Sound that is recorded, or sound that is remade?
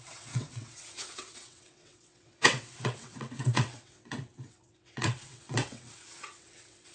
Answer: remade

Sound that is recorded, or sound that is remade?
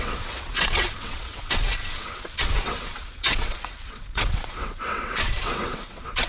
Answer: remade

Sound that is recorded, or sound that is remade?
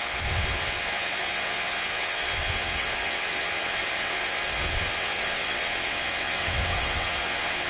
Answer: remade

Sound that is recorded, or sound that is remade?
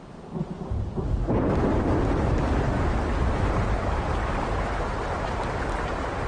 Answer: recorded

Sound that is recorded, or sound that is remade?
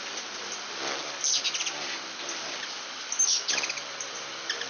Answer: recorded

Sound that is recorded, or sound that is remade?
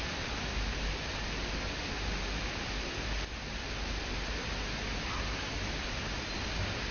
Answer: recorded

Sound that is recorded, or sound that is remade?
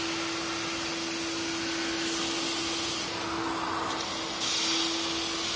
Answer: recorded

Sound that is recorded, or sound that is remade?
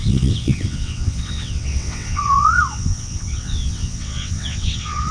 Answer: remade